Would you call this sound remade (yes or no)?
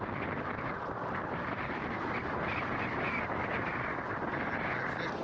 no